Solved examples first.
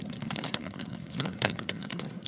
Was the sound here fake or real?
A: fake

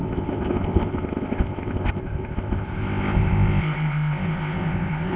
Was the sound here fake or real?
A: fake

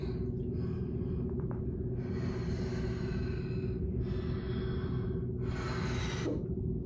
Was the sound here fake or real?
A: real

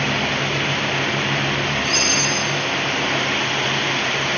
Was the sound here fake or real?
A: fake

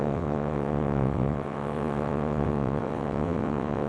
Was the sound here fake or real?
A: fake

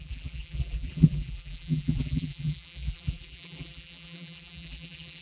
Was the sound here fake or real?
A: fake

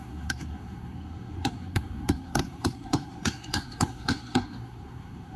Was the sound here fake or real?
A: fake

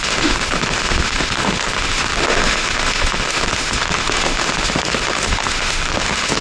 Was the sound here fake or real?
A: fake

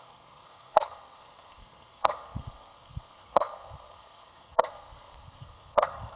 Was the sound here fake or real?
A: fake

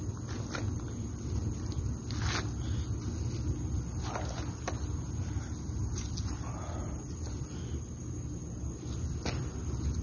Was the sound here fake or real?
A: real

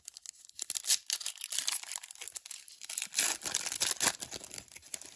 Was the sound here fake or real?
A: real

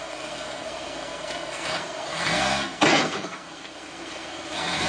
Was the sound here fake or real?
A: fake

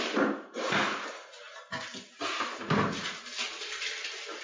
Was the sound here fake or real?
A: real